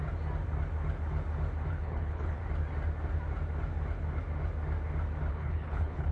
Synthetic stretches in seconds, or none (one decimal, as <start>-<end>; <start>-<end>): 1.7-2.4; 5.3-6.1